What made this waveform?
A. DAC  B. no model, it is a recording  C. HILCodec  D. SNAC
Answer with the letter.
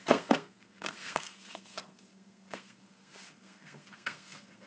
D